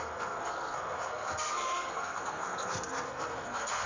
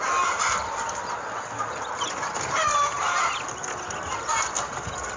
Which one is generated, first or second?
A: first